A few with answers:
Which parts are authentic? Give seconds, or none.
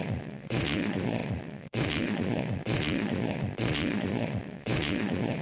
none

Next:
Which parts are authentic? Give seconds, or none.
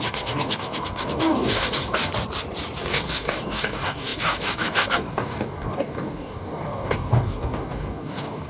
2.1-2.9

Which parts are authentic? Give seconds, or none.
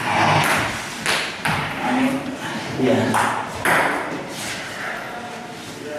0.0-1.4; 5.0-6.0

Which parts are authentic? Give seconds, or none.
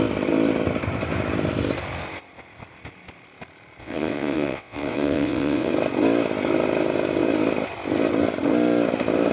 0.0-3.8; 5.7-9.3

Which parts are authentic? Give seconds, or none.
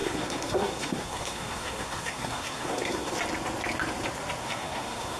3.1-4.4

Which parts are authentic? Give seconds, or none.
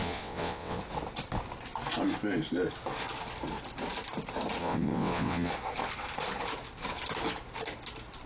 0.8-4.6; 5.5-8.3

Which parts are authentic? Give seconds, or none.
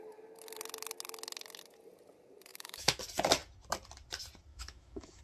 0.0-2.5; 3.0-4.5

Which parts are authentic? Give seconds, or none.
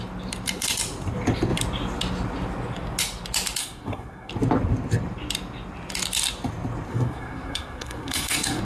0.0-3.6; 4.3-6.9